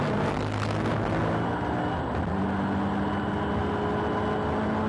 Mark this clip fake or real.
real